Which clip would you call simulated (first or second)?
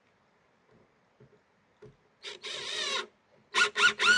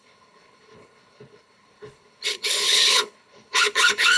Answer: second